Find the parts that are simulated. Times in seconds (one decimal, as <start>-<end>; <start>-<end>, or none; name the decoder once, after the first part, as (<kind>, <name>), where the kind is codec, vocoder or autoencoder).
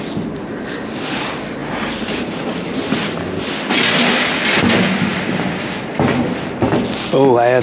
1.6-2.4 (vocoder, BigVGAN v2); 5.1-6.2